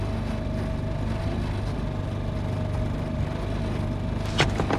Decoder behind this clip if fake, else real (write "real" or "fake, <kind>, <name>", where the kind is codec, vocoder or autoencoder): real